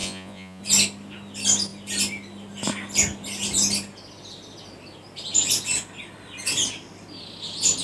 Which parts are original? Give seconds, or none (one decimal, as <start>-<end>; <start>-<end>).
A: 0.6-7.8